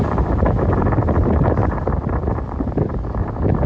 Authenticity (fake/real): real